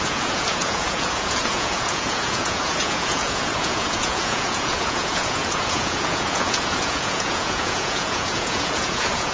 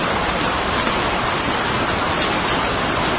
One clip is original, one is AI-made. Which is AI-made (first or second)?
first